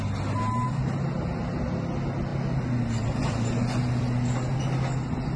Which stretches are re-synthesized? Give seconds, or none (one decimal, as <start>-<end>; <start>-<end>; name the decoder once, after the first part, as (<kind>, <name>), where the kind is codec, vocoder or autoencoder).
none